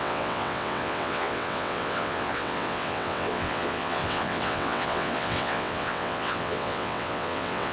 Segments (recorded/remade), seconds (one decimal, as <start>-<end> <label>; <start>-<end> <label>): 0.0-7.7 remade